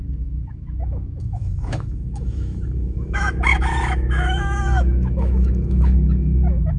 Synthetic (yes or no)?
yes